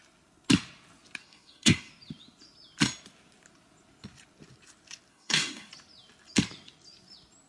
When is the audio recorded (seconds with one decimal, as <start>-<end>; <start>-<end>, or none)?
0.0-1.2; 1.9-5.1; 5.7-7.5